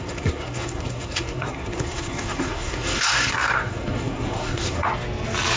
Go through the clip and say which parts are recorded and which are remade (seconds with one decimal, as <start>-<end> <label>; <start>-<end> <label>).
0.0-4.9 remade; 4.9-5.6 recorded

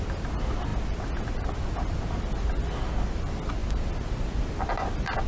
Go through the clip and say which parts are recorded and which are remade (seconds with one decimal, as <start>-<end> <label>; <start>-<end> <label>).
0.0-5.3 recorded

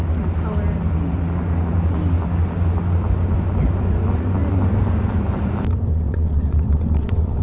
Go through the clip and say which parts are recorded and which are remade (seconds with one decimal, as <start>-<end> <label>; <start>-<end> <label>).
0.0-5.9 recorded; 5.9-7.4 remade